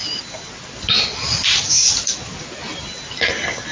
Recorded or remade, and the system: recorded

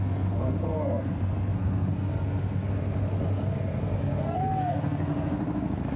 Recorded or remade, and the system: remade, codec, SNAC